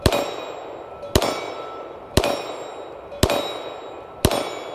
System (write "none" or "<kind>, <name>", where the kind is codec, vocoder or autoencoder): none